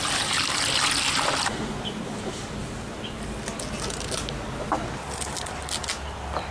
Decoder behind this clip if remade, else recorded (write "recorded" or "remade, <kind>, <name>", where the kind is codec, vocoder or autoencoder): recorded